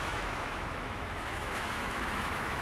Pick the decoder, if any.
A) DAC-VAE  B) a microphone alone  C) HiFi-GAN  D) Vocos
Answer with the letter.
A